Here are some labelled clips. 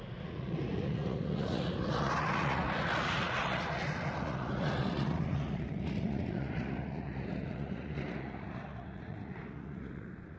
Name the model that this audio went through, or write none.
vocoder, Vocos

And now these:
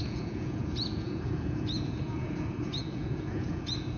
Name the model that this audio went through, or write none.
vocoder, Vocos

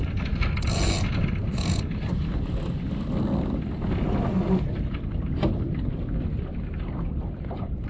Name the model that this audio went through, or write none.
none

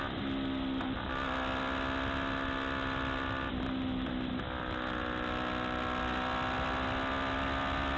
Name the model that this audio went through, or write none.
none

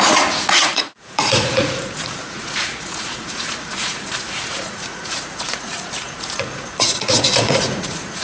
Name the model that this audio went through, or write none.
vocoder, Vocos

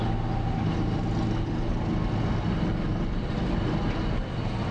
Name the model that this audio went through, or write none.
none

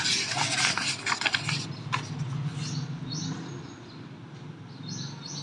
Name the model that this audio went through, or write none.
none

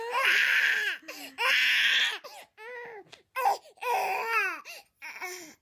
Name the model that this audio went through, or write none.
none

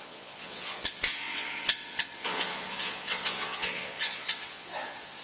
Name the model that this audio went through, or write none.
vocoder, Vocos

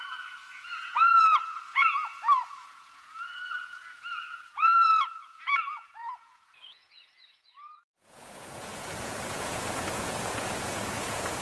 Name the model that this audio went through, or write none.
vocoder, Vocos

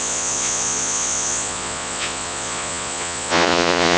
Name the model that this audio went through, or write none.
vocoder, Vocos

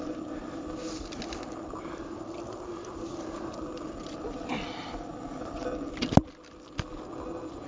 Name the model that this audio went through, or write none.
none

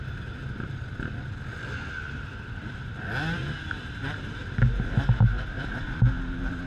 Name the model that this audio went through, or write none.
none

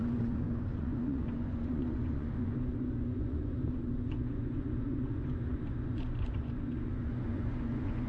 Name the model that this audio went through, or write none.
vocoder, Vocos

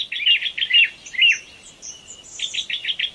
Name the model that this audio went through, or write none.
none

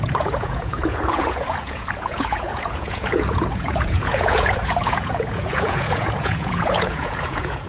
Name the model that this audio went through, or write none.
vocoder, Vocos